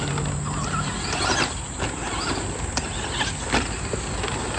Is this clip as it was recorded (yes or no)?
yes